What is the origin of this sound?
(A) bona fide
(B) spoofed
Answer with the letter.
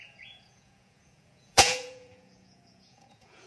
B